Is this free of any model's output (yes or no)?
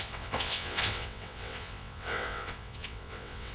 no